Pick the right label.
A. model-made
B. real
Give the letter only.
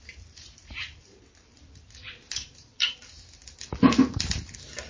A